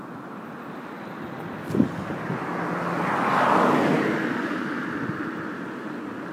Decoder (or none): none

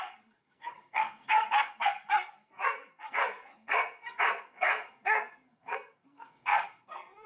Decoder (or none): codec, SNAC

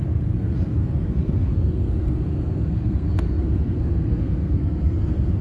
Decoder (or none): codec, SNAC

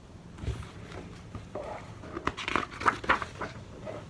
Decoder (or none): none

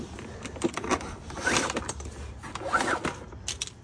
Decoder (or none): none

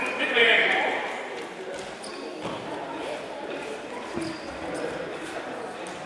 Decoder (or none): none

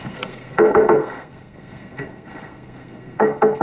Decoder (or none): codec, SNAC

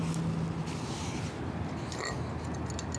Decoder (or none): none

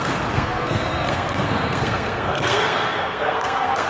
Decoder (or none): codec, SNAC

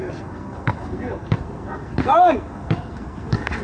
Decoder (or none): codec, SNAC